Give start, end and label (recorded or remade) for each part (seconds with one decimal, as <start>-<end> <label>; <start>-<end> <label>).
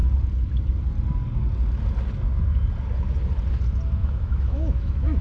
0.0-4.0 recorded; 4.0-5.2 remade